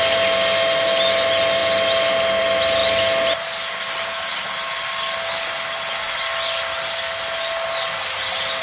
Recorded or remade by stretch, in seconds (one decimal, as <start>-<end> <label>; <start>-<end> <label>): 0.0-8.6 recorded